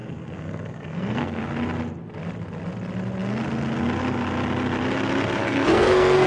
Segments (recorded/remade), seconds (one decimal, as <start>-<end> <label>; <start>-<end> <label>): 0.0-1.4 remade; 1.4-5.4 recorded; 5.4-6.3 remade